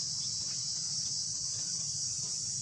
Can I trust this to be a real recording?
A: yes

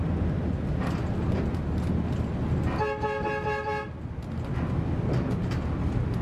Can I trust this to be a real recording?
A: yes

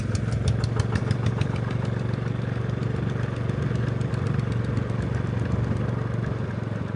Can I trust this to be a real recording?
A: yes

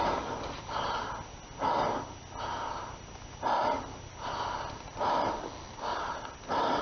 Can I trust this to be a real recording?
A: yes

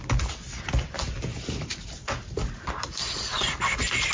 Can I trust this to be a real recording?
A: yes